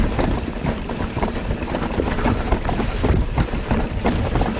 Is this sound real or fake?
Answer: fake